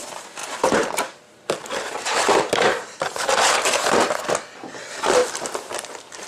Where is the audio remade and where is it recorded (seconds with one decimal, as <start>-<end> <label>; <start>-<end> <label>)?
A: 0.0-0.4 recorded; 0.4-4.2 remade; 4.2-6.3 recorded